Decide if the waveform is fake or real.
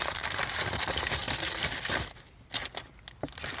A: real